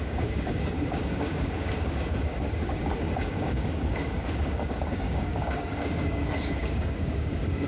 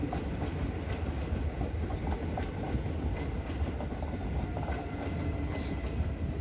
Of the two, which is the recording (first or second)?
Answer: second